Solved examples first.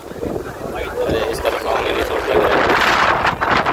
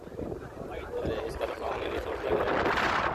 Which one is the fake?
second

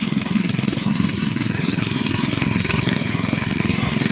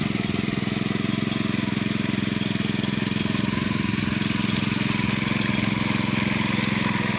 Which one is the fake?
first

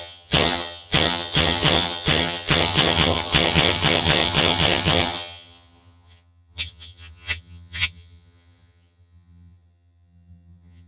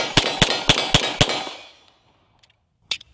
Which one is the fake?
first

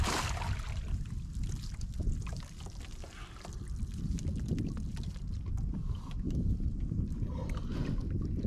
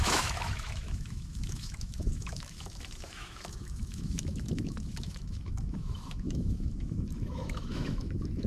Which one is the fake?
second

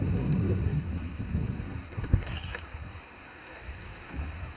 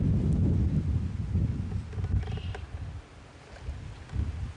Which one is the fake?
first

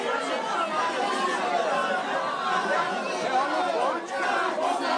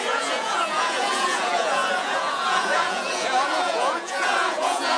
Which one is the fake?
second